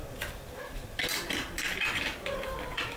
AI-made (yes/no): no